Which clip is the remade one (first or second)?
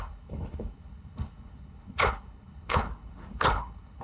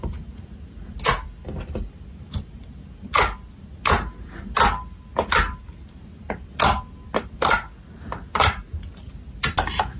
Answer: first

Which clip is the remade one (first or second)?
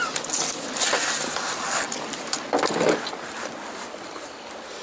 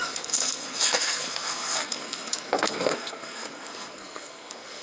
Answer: second